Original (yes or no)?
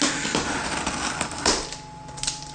yes